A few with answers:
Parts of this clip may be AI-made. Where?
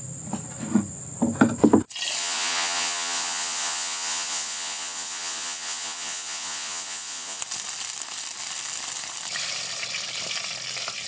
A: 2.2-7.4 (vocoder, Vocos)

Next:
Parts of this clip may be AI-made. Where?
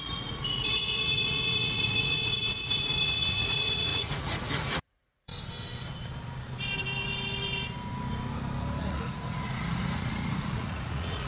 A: 0.0-5.3 (vocoder, Vocos); 8.8-11.3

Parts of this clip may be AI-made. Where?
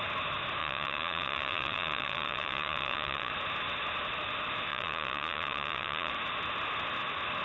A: 0.6-3.3 (vocoder, Vocos); 4.7-6.1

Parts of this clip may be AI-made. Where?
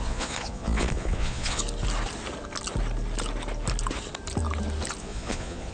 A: 0.0-1.6 (vocoder, Vocos); 5.0-5.7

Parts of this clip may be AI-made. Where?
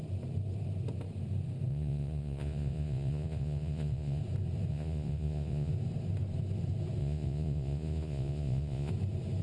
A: 1.7-4.2 (vocoder, Vocos); 4.7-5.7; 7.0-8.9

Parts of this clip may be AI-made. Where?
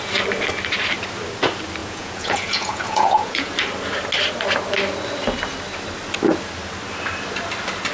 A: 1.8-3.5 (vocoder, Vocos)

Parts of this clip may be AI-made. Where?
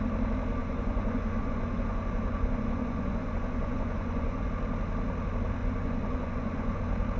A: 0.6-4.5 (vocoder, Vocos); 5.6-6.8